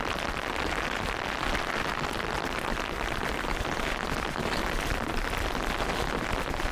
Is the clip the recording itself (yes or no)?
yes